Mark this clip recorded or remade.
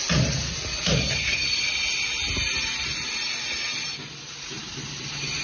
recorded